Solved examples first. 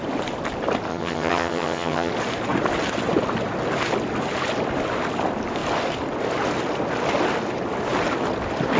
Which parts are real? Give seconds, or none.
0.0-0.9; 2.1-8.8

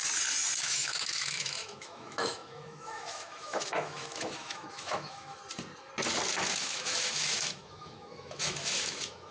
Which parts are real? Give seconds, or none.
0.0-0.6; 5.4-6.6

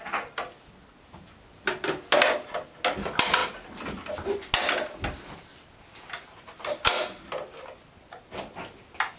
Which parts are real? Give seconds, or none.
0.0-9.2

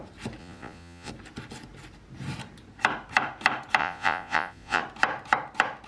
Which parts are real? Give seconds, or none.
0.0-0.4; 1.1-3.8; 4.8-5.9

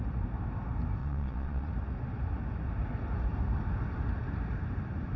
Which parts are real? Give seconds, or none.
0.0-1.0; 1.7-5.2

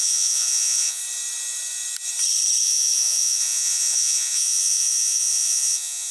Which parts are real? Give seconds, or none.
1.0-2.6

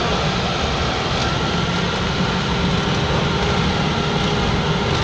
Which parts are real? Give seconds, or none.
0.0-5.0